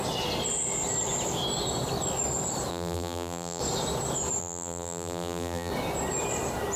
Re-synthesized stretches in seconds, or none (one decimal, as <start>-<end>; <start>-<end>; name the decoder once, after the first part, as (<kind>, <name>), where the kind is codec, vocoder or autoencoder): 2.7-3.6 (vocoder, BigVGAN v2); 4.4-5.7